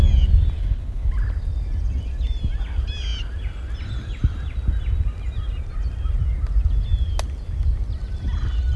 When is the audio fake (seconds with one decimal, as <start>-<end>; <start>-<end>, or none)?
0.6-1.1